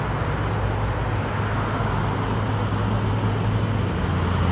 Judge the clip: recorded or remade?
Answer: recorded